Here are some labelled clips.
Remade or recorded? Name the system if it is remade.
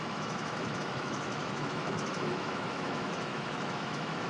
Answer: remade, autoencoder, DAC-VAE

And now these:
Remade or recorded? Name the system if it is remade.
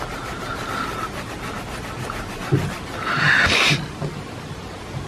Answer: recorded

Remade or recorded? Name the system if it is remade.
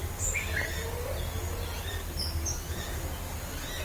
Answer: recorded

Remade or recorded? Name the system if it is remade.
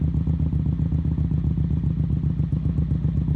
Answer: recorded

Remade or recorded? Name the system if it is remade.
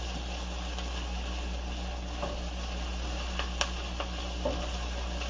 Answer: recorded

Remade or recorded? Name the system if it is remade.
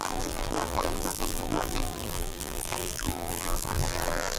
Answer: remade, vocoder, BigVGAN v2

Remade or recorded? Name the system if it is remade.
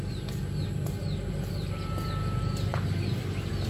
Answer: recorded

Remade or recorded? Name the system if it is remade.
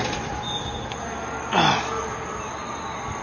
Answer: recorded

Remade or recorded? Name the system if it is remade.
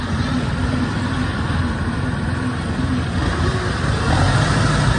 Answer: recorded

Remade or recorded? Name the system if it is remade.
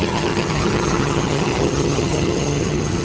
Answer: remade, vocoder, HiFi-GAN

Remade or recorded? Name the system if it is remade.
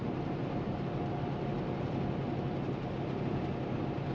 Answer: recorded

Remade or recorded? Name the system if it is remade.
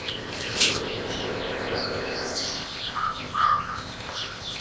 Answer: remade, codec, ZipCodec